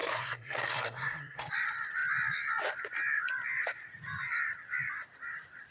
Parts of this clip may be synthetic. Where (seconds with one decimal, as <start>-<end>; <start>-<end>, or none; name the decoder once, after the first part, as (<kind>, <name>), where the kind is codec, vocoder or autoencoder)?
0.0-1.5 (codec, SNAC)